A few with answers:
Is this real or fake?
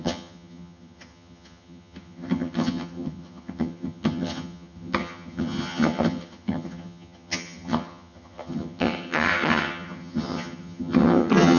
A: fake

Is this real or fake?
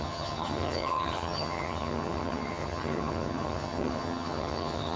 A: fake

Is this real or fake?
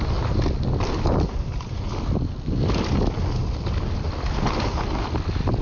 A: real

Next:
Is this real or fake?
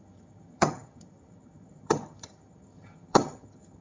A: fake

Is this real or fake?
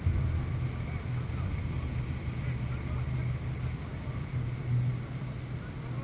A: real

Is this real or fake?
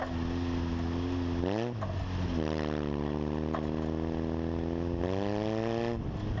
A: real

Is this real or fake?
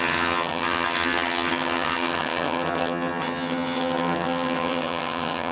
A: fake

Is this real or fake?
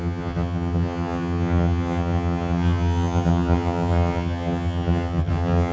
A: fake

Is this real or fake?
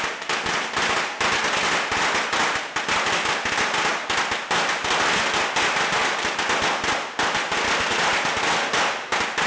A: real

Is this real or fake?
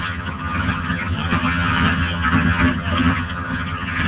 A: fake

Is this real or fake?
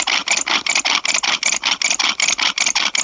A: real